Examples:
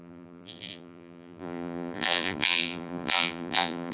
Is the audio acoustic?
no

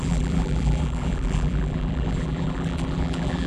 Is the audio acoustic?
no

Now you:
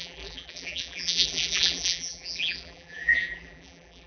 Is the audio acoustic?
no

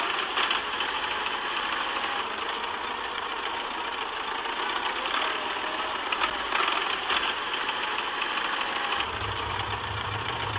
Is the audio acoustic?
yes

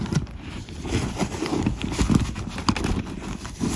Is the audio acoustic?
yes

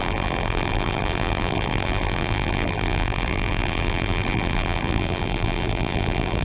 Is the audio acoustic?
no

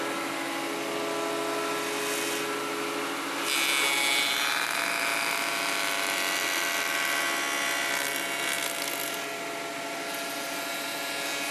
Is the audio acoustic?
yes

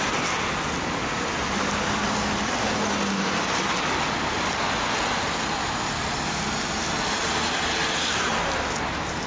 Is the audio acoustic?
yes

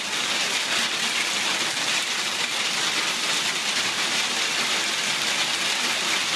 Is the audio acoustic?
no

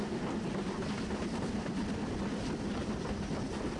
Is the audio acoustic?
yes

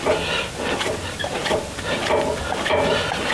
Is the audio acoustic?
yes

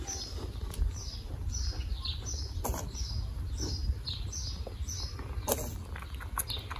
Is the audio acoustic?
yes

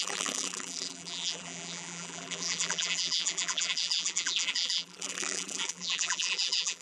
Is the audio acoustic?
no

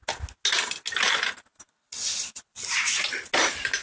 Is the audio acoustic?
yes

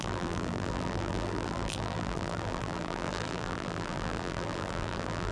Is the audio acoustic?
no